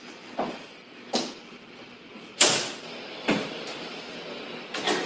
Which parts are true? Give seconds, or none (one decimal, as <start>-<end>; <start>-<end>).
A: 0.0-5.1